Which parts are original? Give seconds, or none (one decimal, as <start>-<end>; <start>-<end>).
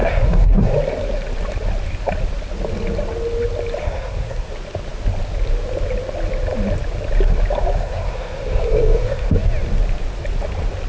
0.7-3.8; 4.5-7.8; 9.3-10.9